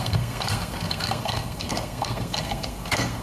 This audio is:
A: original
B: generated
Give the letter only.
B